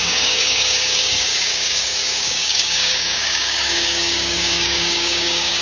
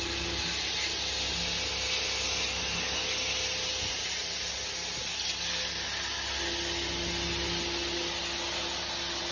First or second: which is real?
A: second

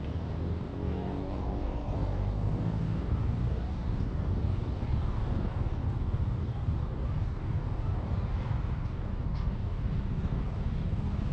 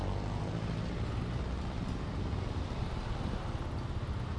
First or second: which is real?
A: second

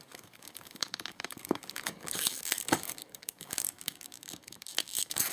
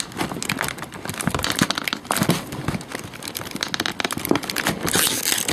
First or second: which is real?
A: second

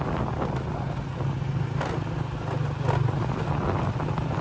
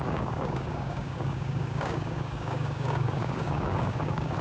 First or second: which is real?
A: first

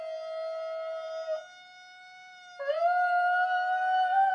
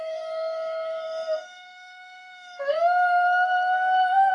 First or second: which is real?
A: first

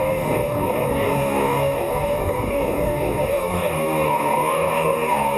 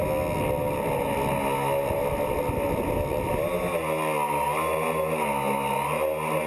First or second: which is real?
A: second